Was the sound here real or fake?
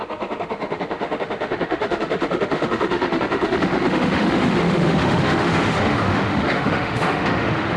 fake